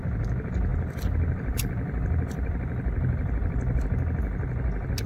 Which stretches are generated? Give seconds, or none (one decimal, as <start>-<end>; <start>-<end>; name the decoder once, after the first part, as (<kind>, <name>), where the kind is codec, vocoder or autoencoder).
0.7-3.8 (vocoder, BigVGAN v2)